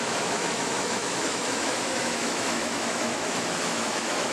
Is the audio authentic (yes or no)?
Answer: no